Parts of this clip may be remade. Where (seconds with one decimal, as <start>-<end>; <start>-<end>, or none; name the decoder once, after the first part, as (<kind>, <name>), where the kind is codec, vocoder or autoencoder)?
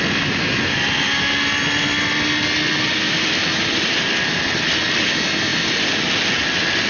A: none